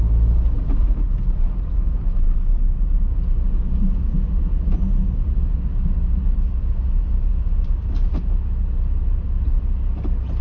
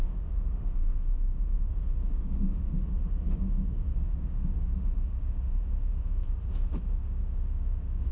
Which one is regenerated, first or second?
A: second